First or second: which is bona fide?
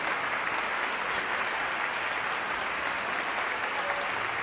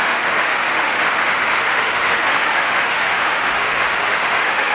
first